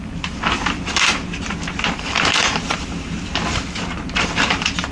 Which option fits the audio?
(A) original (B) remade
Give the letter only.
B